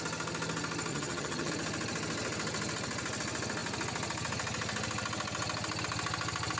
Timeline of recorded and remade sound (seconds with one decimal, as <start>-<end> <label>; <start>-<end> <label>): 0.0-0.9 recorded; 0.9-1.5 remade; 1.5-6.6 recorded